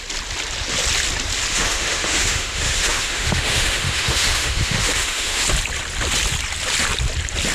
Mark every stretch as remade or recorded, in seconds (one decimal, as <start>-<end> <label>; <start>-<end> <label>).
0.0-1.5 recorded; 1.5-5.4 remade; 5.4-7.5 recorded